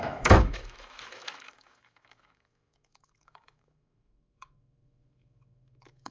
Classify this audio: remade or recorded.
remade